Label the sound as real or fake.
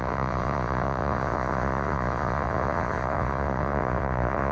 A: fake